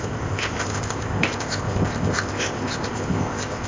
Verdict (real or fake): fake